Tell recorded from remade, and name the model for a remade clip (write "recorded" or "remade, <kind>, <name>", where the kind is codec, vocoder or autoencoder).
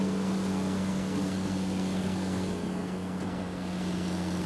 remade, codec, SNAC